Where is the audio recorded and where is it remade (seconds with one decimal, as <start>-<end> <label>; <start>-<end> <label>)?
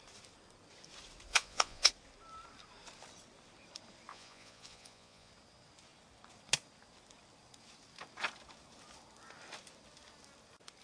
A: 0.0-1.3 recorded; 1.3-1.9 remade; 1.9-4.1 recorded; 4.1-5.3 remade; 5.3-10.8 recorded